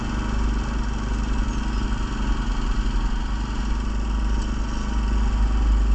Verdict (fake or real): real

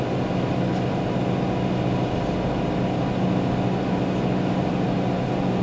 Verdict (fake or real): real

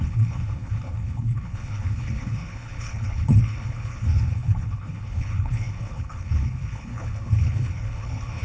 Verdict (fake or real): fake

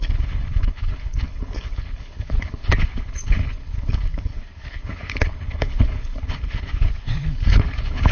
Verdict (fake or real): fake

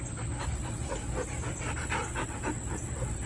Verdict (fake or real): real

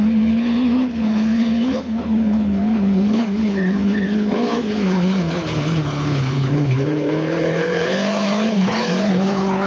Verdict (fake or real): fake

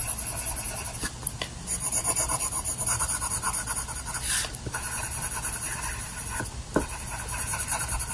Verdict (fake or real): real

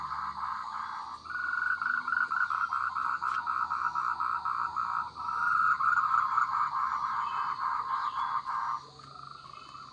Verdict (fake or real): real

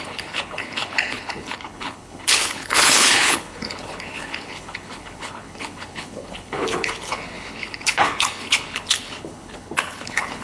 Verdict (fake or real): fake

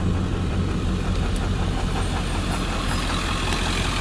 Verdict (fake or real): real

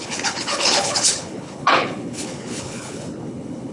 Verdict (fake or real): fake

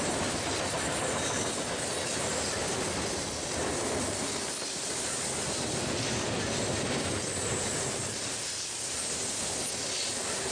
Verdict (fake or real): real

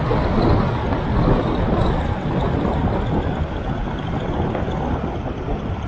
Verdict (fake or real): real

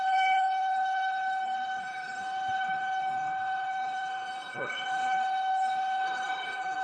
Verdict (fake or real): fake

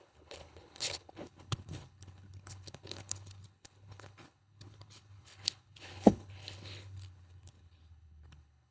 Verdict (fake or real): fake